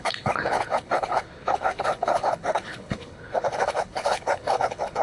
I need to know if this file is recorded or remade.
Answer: remade